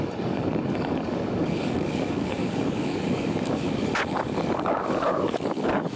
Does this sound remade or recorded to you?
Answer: remade